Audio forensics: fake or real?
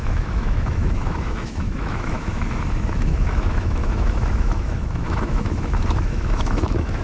fake